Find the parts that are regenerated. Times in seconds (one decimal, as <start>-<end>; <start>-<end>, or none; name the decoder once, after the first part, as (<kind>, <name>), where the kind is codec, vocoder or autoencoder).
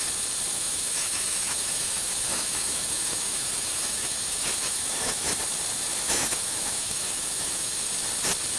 0.5-5.4 (autoencoder, DAC-VAE); 5.9-7.9